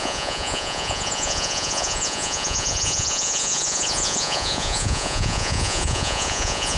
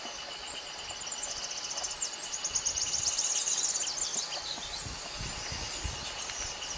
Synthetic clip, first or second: first